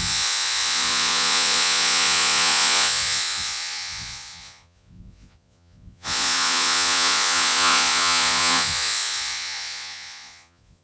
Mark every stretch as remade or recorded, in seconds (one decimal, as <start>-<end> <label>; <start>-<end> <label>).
0.0-10.8 remade